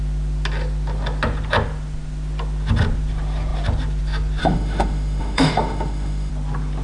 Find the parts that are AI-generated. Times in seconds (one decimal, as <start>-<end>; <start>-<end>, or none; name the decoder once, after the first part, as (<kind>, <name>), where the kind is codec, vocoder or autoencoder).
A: 4.4-6.3 (autoencoder, DAC-VAE)

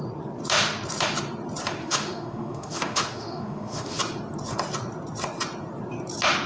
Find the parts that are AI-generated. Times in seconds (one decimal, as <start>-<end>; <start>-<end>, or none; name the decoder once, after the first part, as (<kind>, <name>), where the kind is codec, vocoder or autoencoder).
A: 1.8-4.0 (autoencoder, DAC-VAE)

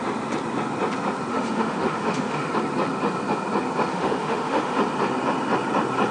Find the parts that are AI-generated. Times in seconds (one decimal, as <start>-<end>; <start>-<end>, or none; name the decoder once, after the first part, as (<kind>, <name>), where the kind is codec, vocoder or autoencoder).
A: 1.3-2.5 (autoencoder, DAC-VAE); 3.9-4.8

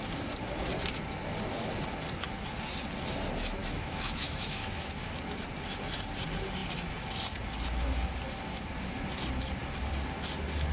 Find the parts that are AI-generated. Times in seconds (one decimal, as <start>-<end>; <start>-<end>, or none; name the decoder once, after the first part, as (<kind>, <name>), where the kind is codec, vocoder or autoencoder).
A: 3.6-4.9 (autoencoder, DAC-VAE)